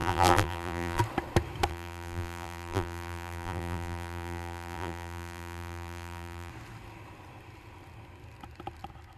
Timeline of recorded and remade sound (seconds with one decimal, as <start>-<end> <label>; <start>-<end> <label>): 0.0-1.0 remade; 1.0-1.7 recorded; 1.7-6.5 remade; 6.5-9.2 recorded